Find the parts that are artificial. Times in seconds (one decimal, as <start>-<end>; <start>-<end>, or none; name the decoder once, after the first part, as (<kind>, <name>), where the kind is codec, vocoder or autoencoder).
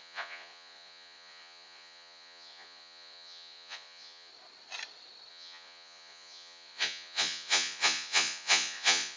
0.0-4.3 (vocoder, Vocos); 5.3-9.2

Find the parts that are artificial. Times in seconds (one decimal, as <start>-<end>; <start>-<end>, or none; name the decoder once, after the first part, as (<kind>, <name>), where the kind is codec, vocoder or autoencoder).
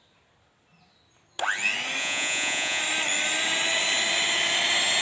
2.0-2.8 (vocoder, Vocos)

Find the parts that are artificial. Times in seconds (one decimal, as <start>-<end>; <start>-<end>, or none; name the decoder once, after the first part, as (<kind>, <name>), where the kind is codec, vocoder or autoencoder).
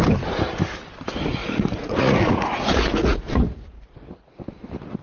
1.4-4.4 (vocoder, Vocos)